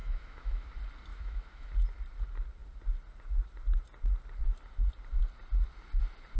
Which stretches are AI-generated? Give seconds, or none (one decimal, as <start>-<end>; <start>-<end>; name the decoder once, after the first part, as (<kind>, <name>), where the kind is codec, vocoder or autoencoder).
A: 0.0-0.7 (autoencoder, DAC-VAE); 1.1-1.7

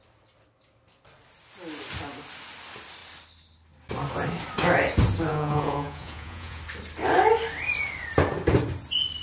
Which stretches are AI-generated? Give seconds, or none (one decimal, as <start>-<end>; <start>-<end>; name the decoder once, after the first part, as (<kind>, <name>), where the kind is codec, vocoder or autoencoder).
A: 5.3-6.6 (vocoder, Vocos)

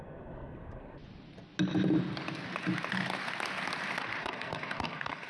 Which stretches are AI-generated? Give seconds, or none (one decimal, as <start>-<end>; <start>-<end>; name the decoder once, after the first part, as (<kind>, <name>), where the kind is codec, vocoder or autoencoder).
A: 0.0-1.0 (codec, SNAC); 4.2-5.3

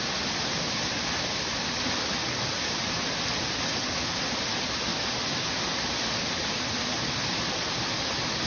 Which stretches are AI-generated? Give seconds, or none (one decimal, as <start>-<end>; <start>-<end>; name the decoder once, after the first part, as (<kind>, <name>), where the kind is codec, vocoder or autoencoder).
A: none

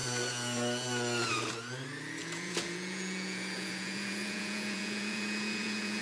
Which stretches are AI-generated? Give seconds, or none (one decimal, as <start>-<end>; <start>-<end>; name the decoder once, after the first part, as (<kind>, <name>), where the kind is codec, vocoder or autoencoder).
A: 2.2-6.0 (vocoder, Vocos)